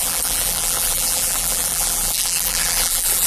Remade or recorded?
remade